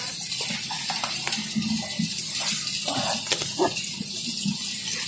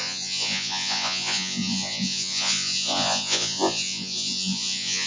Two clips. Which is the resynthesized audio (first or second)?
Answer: second